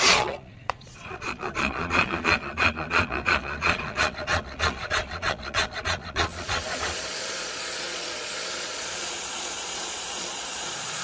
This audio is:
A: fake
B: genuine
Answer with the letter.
A